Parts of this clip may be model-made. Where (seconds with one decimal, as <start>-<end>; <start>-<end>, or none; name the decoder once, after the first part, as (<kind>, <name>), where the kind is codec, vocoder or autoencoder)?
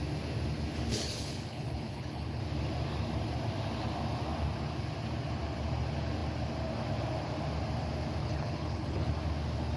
0.9-2.4 (codec, HILCodec); 8.2-9.1